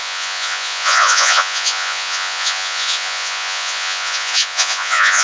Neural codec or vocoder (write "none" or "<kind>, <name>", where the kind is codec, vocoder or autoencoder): vocoder, Vocos